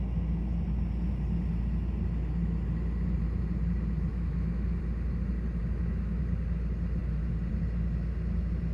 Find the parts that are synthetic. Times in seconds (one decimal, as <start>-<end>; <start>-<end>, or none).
4.1-4.8; 5.6-6.2